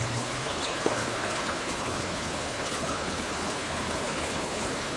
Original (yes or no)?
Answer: no